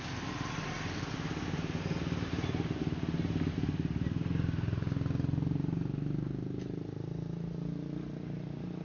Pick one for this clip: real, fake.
real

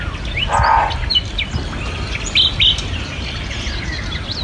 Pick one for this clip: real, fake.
real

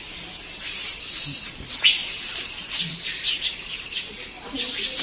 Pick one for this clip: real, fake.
real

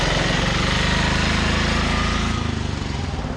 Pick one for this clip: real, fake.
real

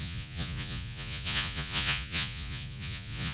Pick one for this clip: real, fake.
fake